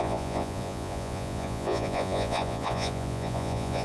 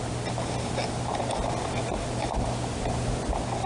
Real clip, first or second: second